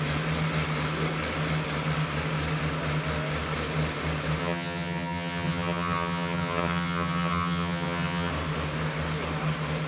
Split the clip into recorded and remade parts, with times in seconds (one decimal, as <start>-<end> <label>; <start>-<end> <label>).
0.0-4.4 recorded; 4.4-8.3 remade; 8.3-9.9 recorded